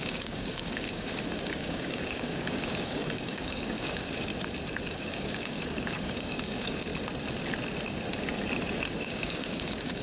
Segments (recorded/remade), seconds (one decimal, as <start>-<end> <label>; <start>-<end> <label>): 0.0-4.3 remade; 4.3-4.8 recorded; 4.8-6.9 remade; 6.9-9.0 recorded; 9.0-10.0 remade